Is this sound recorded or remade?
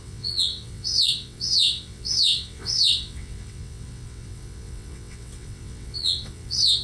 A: remade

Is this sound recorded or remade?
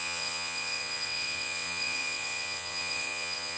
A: remade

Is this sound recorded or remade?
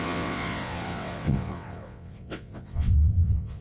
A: remade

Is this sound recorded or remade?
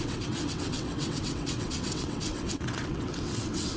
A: remade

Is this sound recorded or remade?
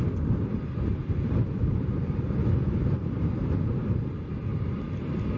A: recorded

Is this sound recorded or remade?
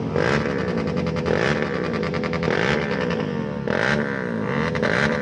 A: recorded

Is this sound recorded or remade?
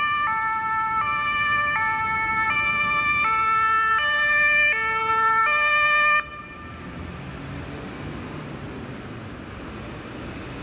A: recorded